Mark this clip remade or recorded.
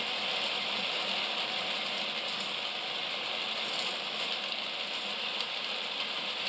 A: recorded